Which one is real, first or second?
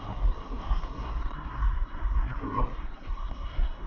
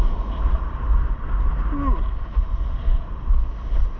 second